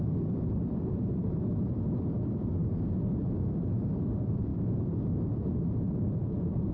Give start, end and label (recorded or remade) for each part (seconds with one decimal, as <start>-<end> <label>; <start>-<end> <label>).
0.0-2.6 remade; 2.6-4.0 recorded; 4.0-4.5 remade; 4.5-5.2 recorded; 5.2-6.7 remade